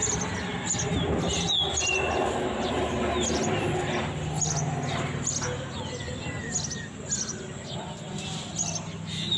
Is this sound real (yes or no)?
yes